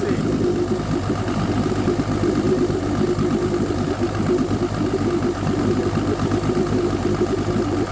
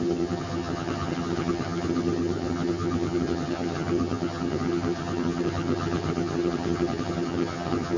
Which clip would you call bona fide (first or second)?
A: first